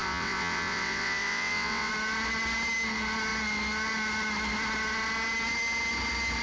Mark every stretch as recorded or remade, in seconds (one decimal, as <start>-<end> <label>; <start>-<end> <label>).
0.0-1.9 remade; 1.9-6.4 recorded